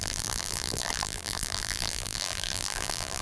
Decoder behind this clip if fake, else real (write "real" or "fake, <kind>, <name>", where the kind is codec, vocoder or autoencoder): fake, vocoder, BigVGAN v2